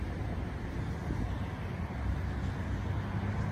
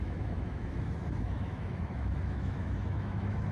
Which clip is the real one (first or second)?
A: first